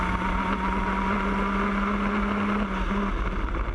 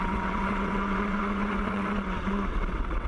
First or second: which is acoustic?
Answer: first